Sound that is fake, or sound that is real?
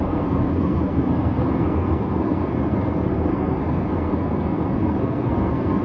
fake